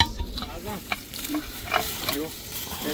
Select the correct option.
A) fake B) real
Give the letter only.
A